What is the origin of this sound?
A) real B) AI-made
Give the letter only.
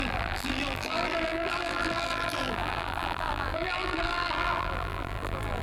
B